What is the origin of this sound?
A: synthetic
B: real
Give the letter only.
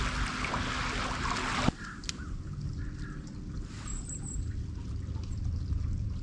B